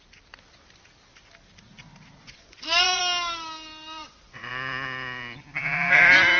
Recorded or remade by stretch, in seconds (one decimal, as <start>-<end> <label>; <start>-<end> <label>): 0.0-2.2 recorded; 2.2-3.0 remade; 3.0-4.0 recorded; 4.0-4.5 remade; 4.5-6.4 recorded